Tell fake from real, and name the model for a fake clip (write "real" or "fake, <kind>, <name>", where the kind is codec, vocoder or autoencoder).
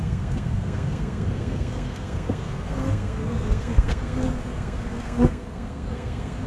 fake, codec, SNAC